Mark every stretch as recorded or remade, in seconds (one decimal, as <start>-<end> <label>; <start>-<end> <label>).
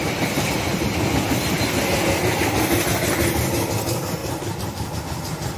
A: 0.0-4.2 recorded; 4.2-5.0 remade; 5.0-5.6 recorded